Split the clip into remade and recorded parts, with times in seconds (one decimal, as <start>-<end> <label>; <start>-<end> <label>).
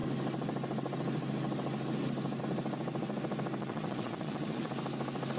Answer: 0.0-3.6 recorded; 3.6-4.7 remade; 4.7-5.4 recorded